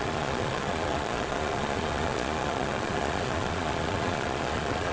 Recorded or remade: remade